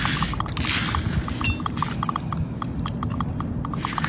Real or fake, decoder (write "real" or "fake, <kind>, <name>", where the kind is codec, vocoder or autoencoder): real